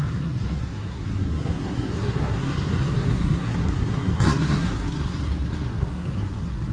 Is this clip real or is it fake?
fake